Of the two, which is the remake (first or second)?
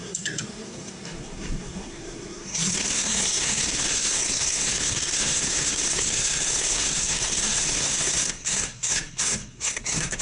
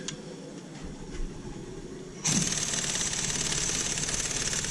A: first